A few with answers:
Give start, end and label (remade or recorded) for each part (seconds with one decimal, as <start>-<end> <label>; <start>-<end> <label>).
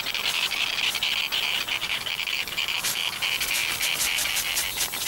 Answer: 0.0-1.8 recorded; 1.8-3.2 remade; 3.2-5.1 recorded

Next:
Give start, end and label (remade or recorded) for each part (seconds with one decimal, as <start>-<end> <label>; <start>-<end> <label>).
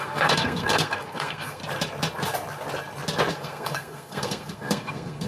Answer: 0.0-1.6 remade; 1.6-3.3 recorded; 3.3-5.3 remade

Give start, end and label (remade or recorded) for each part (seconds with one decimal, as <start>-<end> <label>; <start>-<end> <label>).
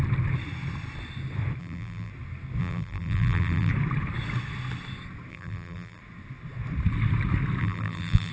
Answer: 0.0-1.6 recorded; 1.6-2.1 remade; 2.1-2.6 recorded; 2.6-3.7 remade; 3.7-5.3 recorded; 5.3-6.0 remade; 6.0-7.6 recorded; 7.6-8.3 remade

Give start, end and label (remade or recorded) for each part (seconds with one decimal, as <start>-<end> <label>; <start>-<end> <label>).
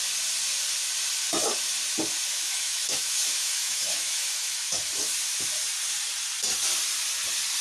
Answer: 0.0-2.3 recorded; 2.3-4.9 remade; 4.9-7.6 recorded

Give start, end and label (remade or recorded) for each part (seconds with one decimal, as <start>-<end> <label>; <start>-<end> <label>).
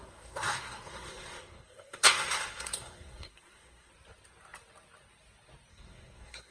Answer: 0.0-3.9 remade; 3.9-5.7 recorded; 5.7-6.5 remade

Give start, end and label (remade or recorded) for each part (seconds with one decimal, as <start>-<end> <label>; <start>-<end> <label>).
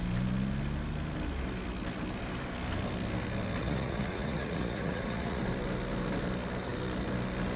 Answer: 0.0-3.6 recorded; 3.6-5.4 remade; 5.4-7.6 recorded